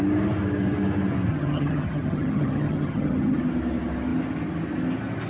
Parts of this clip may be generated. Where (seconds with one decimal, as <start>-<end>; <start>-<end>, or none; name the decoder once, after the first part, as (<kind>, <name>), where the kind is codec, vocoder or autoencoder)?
1.3-3.4 (vocoder, HiFi-GAN)